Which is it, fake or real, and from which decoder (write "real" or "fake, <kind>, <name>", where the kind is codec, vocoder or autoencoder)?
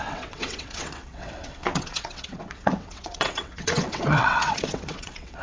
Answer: fake, vocoder, WaveNeXt